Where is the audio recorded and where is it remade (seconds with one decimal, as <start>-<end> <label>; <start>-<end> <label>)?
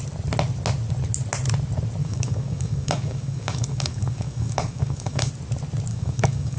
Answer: 0.0-2.0 recorded; 2.0-5.3 remade; 5.3-5.9 recorded; 5.9-6.6 remade